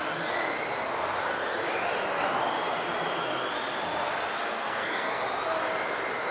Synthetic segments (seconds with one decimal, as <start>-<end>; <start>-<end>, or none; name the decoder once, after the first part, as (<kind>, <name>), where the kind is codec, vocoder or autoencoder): 4.4-5.2 (codec, SNAC)